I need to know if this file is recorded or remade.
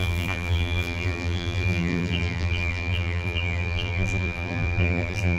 remade